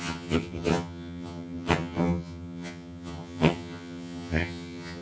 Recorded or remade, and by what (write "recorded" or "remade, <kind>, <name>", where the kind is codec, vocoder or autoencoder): remade, vocoder, HiFi-GAN